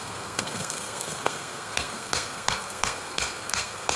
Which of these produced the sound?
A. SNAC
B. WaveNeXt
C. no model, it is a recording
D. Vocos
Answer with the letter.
A